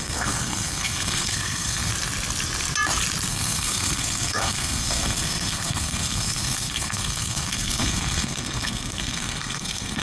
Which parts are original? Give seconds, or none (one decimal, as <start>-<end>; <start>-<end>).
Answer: 1.9-3.3